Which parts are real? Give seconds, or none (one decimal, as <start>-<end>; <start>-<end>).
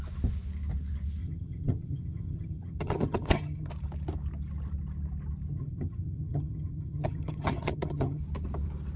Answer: 0.0-1.2; 3.7-5.5; 8.2-9.0